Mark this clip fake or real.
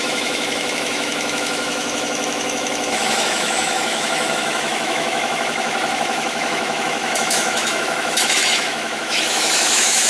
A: fake